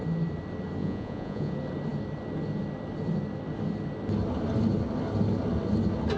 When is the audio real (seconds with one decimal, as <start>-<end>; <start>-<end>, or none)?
0.0-0.8; 1.5-6.2